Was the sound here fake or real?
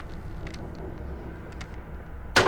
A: real